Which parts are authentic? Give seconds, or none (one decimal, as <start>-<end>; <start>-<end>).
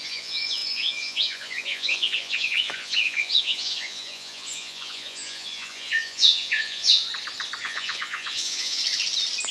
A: 7.1-7.6; 8.8-9.5